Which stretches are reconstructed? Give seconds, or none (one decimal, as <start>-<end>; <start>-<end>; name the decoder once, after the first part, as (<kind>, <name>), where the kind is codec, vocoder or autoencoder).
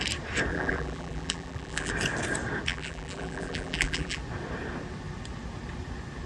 0.5-1.9 (vocoder, BigVGAN v2); 2.7-4.2